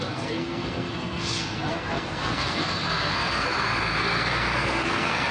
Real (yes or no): no